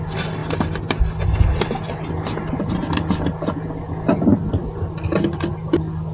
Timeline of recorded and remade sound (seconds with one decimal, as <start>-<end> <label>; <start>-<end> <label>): 0.0-6.1 recorded